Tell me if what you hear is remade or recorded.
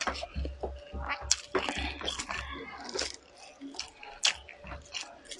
recorded